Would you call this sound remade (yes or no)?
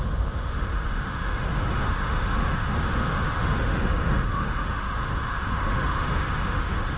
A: yes